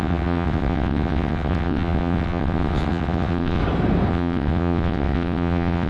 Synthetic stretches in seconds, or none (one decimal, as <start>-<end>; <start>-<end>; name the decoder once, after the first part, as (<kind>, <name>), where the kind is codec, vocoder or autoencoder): 0.0-3.6 (vocoder, WaveNeXt); 4.1-5.9